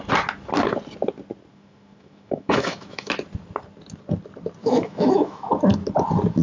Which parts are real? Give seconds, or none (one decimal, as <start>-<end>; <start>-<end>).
0.0-1.5; 3.1-4.6; 5.5-6.4